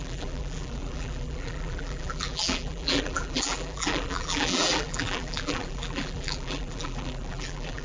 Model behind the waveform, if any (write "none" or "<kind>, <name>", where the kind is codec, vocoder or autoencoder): vocoder, BigVGAN v2